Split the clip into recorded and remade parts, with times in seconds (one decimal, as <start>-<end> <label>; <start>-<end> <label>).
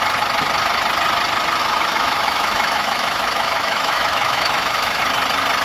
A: 0.0-1.6 recorded; 1.6-5.0 remade; 5.0-5.6 recorded